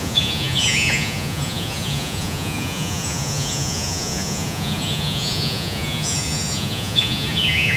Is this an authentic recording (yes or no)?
no